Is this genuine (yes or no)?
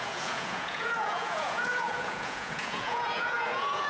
no